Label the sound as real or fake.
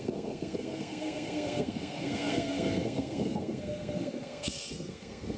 fake